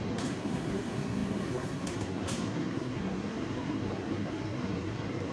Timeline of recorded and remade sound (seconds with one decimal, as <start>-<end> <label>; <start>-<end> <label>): 0.0-5.3 remade